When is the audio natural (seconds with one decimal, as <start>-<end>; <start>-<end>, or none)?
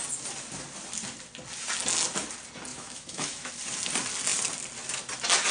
0.0-2.7; 3.5-5.5